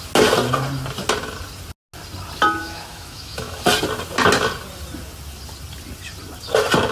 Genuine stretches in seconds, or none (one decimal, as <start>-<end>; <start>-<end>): 0.0-2.6; 3.6-6.9